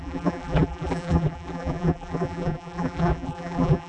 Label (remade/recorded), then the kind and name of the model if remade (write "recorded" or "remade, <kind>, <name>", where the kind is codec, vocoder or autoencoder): remade, vocoder, BigVGAN v2